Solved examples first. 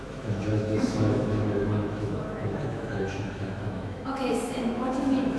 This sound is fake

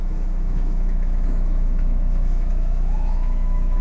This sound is fake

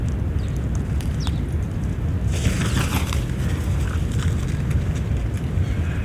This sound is real